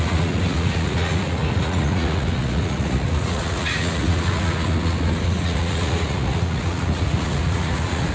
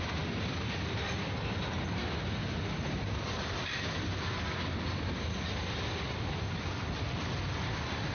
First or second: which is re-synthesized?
first